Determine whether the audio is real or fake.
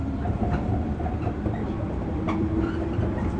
fake